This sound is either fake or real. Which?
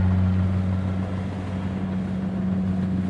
real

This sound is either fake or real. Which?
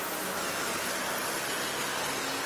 real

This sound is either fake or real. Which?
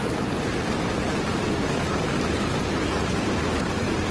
real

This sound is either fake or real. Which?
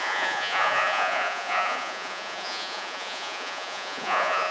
fake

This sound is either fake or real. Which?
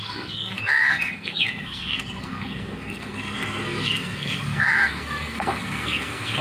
fake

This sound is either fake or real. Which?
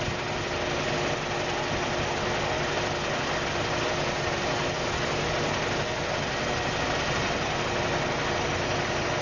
real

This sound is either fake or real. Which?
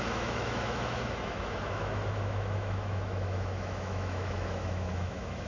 fake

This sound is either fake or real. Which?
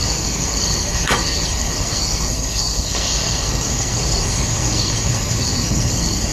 fake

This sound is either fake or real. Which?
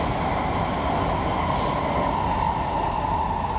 real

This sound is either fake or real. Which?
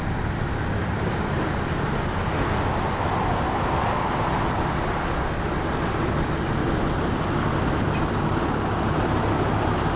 real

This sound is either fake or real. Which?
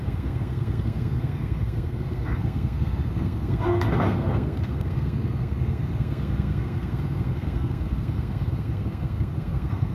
fake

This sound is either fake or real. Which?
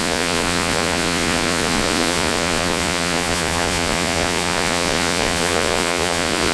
fake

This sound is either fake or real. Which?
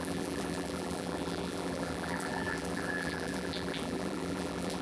fake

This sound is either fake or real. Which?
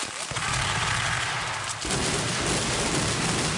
real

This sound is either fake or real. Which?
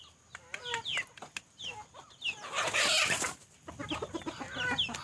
real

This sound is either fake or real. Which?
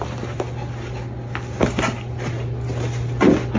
real